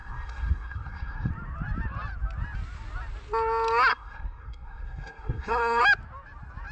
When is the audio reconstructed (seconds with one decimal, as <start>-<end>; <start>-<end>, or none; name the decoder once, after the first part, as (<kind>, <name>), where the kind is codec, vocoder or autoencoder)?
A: 0.0-1.3 (codec, SNAC); 3.9-5.8